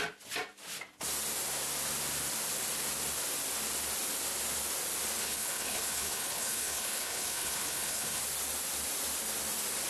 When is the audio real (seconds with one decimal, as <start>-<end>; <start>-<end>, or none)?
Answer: 0.0-5.2; 8.2-9.9